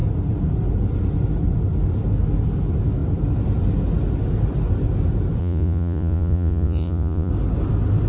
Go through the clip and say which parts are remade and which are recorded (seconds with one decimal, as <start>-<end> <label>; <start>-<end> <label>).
0.0-5.4 recorded; 5.4-7.3 remade; 7.3-8.1 recorded